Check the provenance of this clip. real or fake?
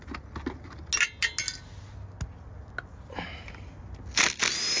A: real